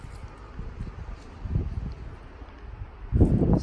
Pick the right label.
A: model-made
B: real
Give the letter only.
B